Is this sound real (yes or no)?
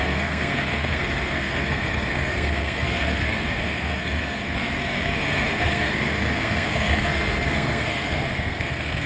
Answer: no